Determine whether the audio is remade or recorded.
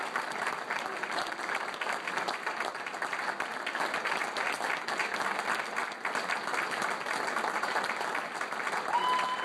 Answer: recorded